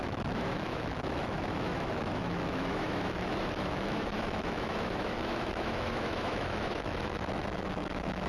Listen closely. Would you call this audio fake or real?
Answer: fake